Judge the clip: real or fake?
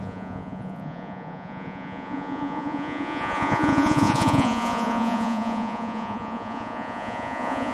fake